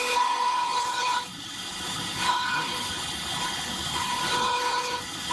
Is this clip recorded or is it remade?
remade